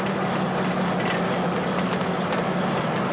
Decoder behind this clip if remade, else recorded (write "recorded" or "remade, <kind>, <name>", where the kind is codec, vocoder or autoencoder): recorded